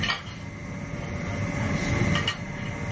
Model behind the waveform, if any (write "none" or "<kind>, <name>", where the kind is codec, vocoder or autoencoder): none